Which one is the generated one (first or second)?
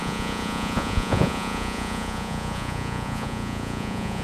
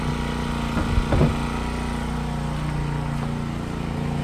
first